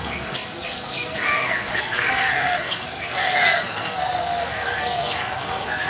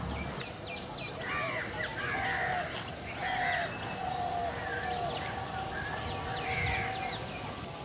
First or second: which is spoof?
first